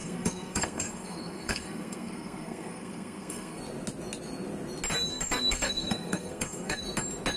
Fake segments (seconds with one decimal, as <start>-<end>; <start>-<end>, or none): 0.0-3.6; 5.1-6.8